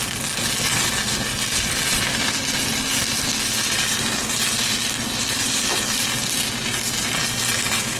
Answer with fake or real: real